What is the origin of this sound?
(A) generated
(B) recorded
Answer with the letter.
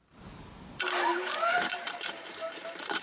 A